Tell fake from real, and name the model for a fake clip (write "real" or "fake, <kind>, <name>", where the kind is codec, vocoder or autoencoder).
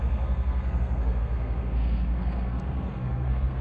fake, codec, SNAC